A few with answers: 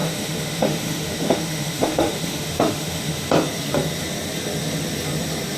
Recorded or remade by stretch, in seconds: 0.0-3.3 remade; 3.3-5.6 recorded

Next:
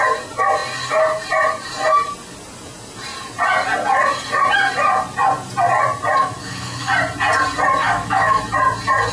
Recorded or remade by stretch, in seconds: 0.0-6.2 recorded; 6.2-6.9 remade; 6.9-7.8 recorded; 7.8-8.4 remade; 8.4-9.1 recorded

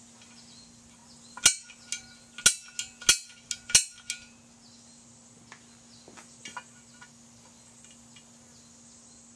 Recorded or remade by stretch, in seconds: 0.0-9.4 recorded

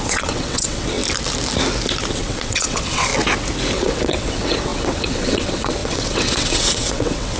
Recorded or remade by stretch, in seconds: 0.0-1.0 remade; 1.0-2.1 recorded; 2.1-3.1 remade; 3.1-3.7 recorded; 3.7-7.4 remade

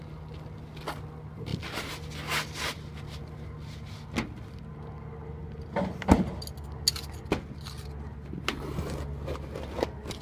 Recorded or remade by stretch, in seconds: 0.0-10.2 recorded

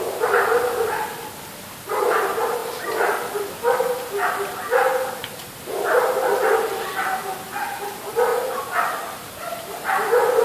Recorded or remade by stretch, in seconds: 0.0-10.4 recorded

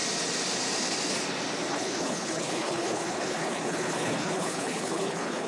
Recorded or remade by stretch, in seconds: 0.0-1.7 recorded; 1.7-5.5 remade